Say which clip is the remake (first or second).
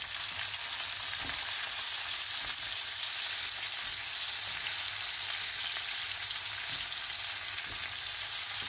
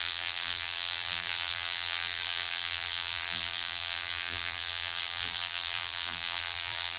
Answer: second